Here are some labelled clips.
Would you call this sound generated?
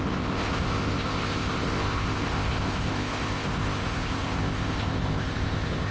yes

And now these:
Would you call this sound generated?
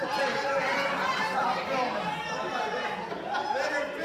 no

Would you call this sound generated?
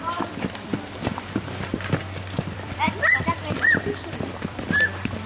yes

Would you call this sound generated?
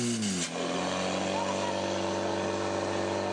no